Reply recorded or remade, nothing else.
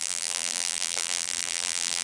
remade